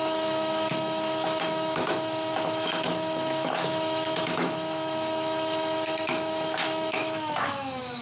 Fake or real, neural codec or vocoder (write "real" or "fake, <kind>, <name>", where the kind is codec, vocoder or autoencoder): fake, autoencoder, DAC-VAE